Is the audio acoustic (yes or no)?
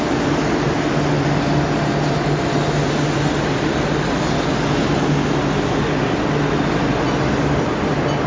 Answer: yes